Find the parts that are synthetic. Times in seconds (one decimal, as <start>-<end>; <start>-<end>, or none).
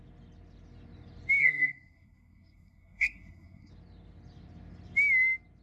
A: 1.4-3.7